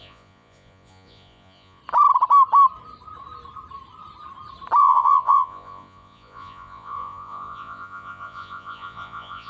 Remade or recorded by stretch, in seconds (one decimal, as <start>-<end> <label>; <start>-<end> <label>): 0.0-1.8 remade; 1.8-4.8 recorded; 4.8-9.5 remade